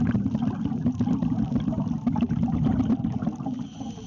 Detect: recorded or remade recorded